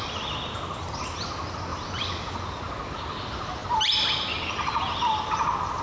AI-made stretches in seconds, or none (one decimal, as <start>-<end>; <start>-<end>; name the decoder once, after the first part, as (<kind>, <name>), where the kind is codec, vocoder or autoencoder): none